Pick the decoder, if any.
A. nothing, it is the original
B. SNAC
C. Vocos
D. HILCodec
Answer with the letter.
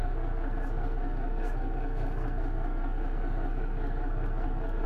B